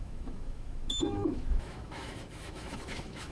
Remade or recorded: remade